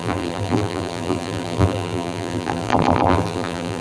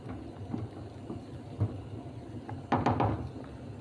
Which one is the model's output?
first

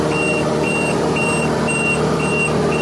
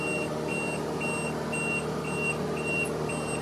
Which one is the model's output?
first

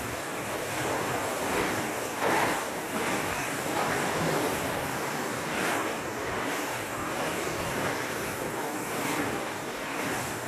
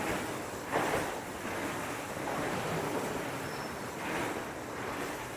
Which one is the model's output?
first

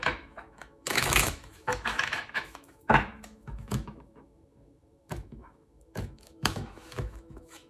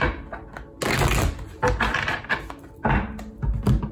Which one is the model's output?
first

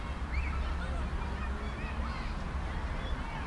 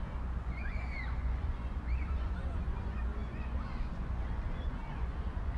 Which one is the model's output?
second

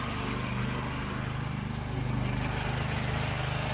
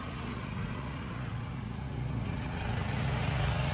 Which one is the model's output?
second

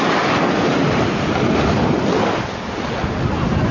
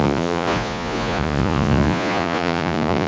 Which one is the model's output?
second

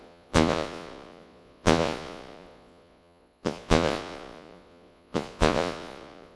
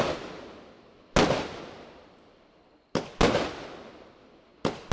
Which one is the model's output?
first